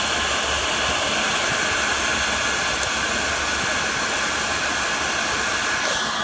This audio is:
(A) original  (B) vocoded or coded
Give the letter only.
A